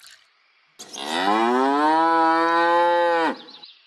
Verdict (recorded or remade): recorded